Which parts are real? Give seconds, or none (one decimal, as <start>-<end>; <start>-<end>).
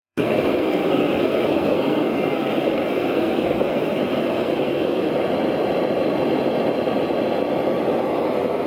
5.1-8.7